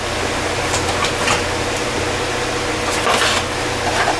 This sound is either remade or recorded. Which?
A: recorded